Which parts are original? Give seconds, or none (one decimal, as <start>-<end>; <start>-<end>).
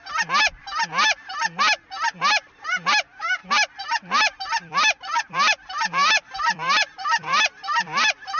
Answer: 0.0-3.4